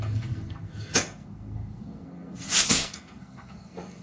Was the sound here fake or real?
fake